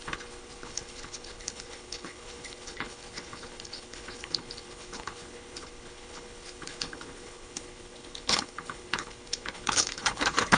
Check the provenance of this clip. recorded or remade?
remade